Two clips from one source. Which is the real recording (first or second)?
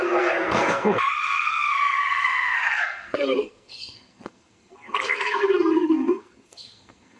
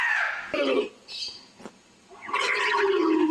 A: second